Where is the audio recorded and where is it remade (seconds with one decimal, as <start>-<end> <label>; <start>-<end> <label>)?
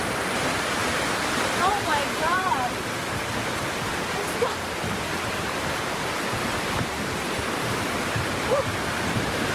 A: 0.0-0.8 remade; 0.8-1.4 recorded; 1.4-3.4 remade; 3.4-5.3 recorded; 5.3-9.5 remade